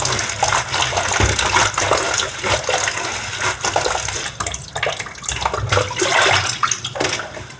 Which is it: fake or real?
real